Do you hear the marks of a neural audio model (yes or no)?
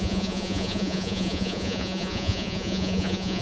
yes